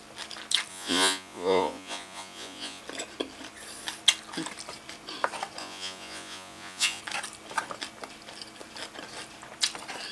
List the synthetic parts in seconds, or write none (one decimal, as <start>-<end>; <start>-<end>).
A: 0.7-2.8; 5.6-7.0